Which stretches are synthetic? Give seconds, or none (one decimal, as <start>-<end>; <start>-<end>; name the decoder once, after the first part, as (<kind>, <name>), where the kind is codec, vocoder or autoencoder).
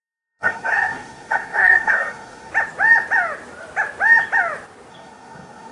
0.0-2.5 (codec, SNAC); 4.9-5.7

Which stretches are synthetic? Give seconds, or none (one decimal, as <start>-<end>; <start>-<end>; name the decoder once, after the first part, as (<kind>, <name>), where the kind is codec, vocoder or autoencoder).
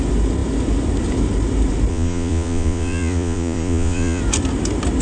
1.9-4.2 (vocoder, Vocos)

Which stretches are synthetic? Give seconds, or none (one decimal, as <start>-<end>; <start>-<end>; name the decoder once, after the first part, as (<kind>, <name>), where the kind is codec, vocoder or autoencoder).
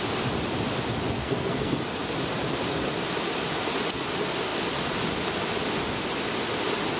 1.2-1.8 (codec, SNAC)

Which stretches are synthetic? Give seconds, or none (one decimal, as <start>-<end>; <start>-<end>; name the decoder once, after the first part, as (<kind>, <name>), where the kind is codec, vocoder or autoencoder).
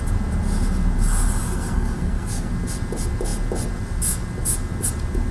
1.4-2.5 (codec, SNAC)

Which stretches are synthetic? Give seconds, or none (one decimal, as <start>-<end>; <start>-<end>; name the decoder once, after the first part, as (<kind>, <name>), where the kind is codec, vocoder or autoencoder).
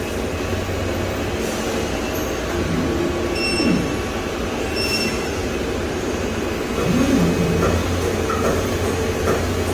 none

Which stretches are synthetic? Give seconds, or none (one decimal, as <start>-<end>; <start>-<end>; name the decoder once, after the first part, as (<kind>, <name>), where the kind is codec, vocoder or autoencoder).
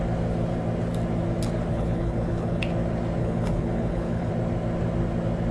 1.7-2.6 (codec, HILCodec); 3.2-4.3